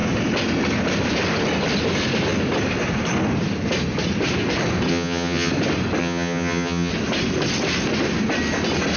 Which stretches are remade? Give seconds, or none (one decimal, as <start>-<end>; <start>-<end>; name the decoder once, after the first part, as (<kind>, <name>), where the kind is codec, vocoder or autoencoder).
4.9-5.5 (vocoder, HiFi-GAN); 6.0-6.9